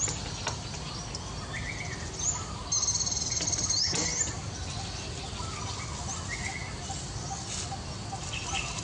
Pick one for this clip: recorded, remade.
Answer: recorded